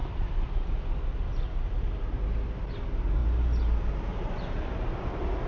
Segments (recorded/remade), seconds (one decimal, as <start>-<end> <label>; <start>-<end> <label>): 0.0-5.5 recorded